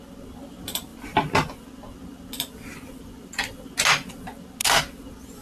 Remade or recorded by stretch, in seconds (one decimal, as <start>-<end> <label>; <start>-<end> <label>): 0.0-5.4 recorded